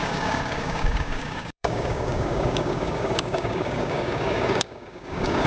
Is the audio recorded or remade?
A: remade